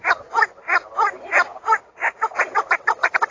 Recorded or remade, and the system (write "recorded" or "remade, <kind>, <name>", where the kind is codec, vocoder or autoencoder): recorded